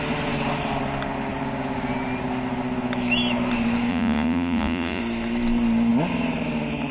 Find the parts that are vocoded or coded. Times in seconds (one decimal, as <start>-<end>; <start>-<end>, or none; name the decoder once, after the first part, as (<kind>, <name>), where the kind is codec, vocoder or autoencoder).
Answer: 3.9-5.0 (vocoder, Vocos)